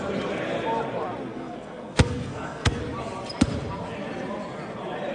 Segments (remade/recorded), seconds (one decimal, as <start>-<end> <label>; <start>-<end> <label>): 0.0-1.3 recorded; 1.3-2.8 remade; 2.8-5.1 recorded